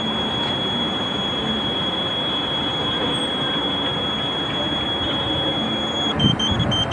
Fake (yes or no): yes